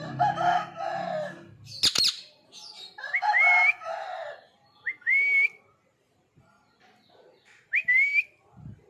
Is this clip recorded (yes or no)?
yes